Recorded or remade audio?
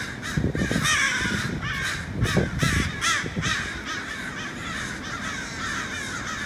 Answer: recorded